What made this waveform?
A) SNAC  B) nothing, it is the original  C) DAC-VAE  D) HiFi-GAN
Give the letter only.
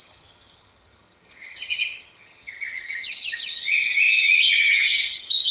D